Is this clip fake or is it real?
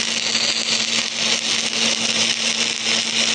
real